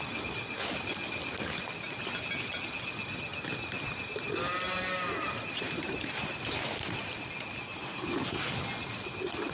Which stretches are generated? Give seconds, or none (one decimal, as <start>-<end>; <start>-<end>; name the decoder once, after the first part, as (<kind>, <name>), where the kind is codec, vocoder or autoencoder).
none